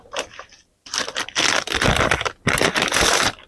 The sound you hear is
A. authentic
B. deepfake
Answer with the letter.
A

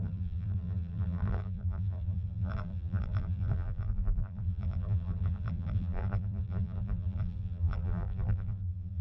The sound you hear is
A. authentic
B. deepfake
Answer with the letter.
B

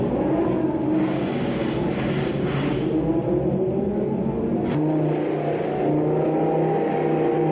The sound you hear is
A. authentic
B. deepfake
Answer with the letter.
A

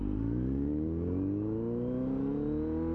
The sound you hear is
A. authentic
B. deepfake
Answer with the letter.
A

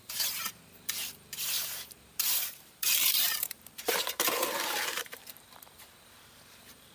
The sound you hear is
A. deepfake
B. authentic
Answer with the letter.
A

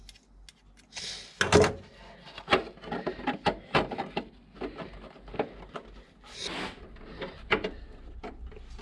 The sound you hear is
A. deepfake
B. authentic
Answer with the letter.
B